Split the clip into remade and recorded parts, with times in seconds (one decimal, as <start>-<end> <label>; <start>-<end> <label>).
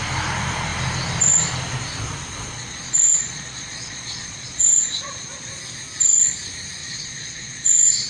0.0-2.5 recorded; 2.5-5.5 remade; 5.5-6.8 recorded; 6.8-8.1 remade